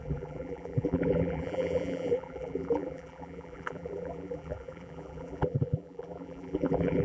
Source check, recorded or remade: remade